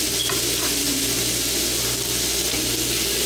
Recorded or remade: recorded